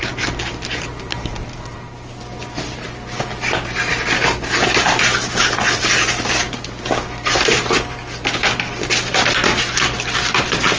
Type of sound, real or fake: real